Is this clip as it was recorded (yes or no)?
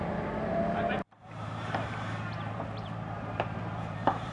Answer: no